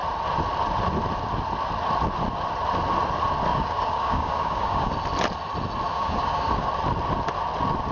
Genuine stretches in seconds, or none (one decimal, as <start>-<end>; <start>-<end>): 0.0-3.5; 4.9-5.9; 6.7-7.9